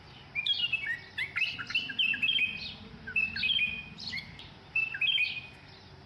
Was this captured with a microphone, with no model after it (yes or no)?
yes